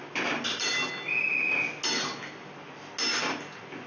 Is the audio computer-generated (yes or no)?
no